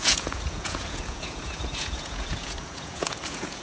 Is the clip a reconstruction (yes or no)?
yes